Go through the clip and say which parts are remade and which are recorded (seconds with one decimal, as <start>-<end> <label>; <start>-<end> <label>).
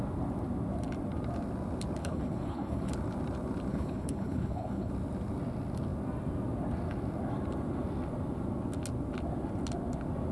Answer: 0.0-2.0 recorded; 2.0-2.9 remade; 2.9-3.7 recorded; 3.7-4.9 remade; 4.9-10.3 recorded